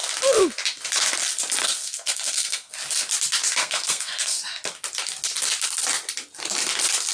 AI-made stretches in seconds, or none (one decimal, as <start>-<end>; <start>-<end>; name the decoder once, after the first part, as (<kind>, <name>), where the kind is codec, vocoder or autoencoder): 1.6-2.7 (codec, SNAC); 3.6-4.4